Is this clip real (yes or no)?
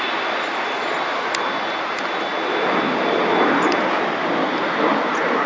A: yes